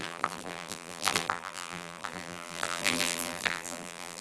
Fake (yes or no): yes